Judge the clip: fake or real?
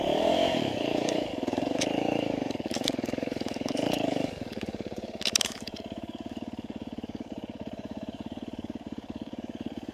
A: fake